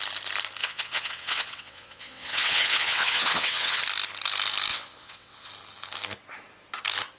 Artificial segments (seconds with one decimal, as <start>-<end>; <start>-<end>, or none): 0.6-3.8; 4.7-5.5